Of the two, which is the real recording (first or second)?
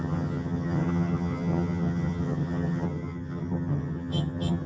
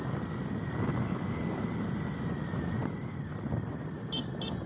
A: second